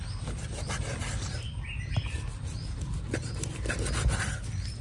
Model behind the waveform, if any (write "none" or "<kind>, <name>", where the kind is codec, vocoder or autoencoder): none